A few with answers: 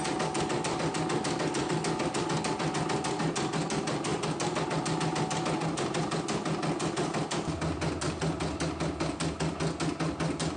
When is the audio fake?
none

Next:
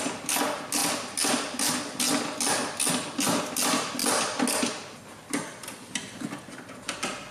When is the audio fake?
none

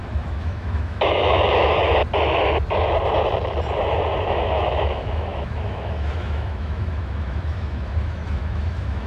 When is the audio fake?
0.0-2.0; 4.3-9.1

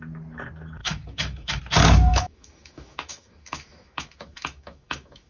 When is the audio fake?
0.8-1.6; 2.1-5.3